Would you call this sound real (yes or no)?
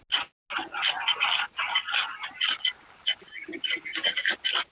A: yes